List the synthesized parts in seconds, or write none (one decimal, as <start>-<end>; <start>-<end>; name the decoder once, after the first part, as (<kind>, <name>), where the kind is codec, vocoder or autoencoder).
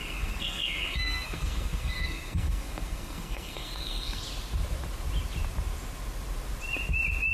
0.0-4.2 (codec, SNAC)